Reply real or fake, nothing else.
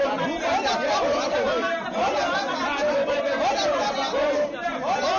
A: real